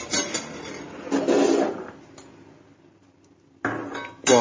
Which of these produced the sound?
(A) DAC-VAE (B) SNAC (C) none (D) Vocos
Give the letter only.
C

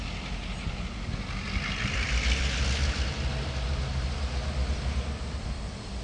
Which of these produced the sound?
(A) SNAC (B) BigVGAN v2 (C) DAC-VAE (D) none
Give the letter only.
D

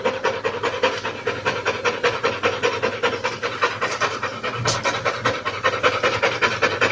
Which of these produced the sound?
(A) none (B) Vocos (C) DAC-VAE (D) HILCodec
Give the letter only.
A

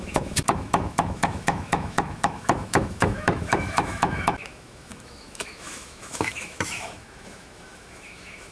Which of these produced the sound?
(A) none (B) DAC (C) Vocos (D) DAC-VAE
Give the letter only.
D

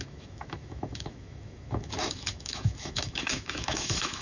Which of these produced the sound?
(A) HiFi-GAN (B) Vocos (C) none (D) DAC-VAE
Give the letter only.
D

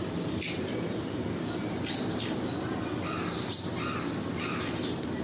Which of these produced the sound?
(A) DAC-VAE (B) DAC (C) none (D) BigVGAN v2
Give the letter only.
C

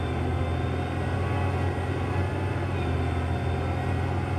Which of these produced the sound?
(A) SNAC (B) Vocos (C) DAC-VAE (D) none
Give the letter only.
D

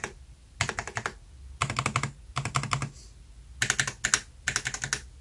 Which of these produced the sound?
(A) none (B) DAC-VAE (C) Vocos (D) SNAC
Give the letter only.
A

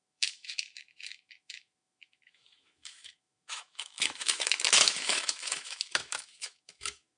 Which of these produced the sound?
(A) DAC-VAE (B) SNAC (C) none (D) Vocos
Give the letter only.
A